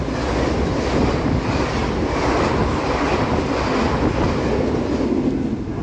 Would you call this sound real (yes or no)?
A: yes